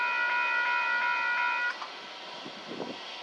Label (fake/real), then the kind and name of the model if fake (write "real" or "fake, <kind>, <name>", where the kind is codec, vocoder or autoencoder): real